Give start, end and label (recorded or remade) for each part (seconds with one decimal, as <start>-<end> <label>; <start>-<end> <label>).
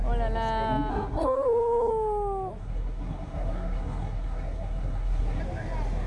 0.0-0.9 recorded; 0.9-1.9 remade; 1.9-2.6 recorded; 2.6-5.4 remade; 5.4-6.1 recorded